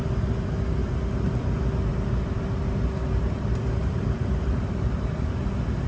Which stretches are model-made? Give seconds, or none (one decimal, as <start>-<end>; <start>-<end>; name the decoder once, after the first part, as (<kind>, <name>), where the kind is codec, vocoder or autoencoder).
0.8-1.4 (vocoder, BigVGAN v2); 1.9-5.4